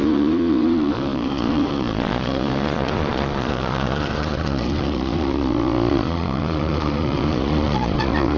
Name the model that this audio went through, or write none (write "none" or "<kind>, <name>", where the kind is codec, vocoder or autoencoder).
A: vocoder, Vocos